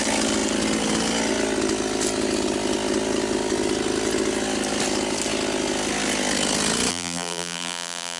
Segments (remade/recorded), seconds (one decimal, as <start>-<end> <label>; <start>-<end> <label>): 0.0-6.9 recorded; 6.9-8.2 remade